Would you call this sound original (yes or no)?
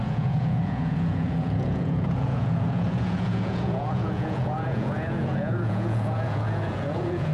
no